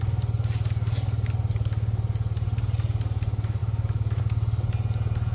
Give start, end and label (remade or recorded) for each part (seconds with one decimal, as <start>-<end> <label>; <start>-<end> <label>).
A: 0.0-3.6 recorded; 3.6-4.2 remade; 4.2-5.3 recorded